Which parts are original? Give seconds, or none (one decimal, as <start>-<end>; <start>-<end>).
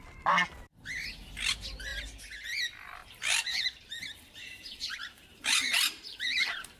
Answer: 0.0-3.0